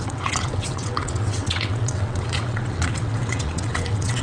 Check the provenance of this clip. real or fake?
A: fake